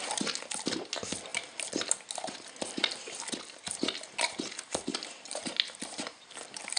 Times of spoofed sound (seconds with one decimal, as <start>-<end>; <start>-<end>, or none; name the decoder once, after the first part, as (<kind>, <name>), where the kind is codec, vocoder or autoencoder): none